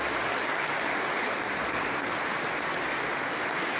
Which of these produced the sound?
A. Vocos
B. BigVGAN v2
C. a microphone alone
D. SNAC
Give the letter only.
C